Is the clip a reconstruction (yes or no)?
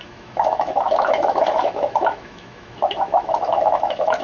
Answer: yes